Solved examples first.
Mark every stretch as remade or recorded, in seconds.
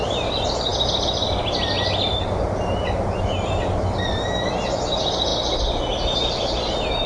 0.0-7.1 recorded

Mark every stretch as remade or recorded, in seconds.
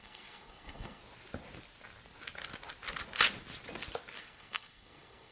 0.0-1.0 remade; 1.0-4.2 recorded; 4.2-5.3 remade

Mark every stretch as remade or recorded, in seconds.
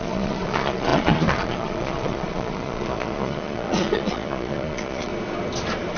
0.0-5.1 remade; 5.1-6.0 recorded